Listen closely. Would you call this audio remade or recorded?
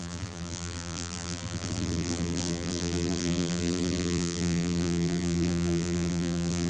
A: remade